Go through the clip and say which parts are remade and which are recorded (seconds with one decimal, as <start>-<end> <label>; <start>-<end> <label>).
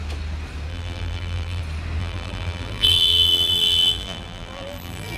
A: 0.0-0.7 recorded; 0.7-1.6 remade; 1.6-2.0 recorded; 2.0-5.2 remade